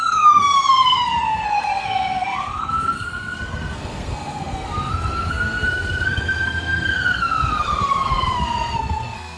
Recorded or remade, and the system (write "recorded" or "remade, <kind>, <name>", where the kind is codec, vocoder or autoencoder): remade, codec, SNAC